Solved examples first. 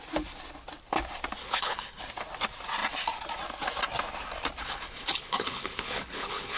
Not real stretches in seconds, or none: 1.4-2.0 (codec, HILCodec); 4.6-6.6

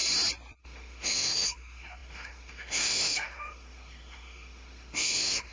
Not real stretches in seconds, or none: 0.6-5.5 (autoencoder, DAC-VAE)